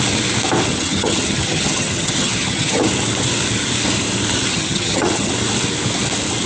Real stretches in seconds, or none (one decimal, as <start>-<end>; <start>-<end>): 0.0-0.7; 2.9-4.5; 5.3-6.5